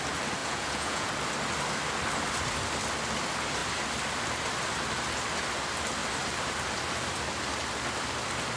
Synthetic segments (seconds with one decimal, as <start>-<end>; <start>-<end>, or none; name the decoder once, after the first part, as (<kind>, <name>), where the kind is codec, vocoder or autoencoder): 0.4-1.1 (vocoder, Vocos)